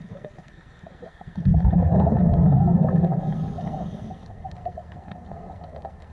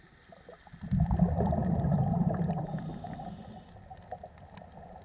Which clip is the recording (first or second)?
second